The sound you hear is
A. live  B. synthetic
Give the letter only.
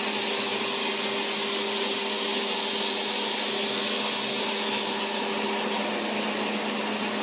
A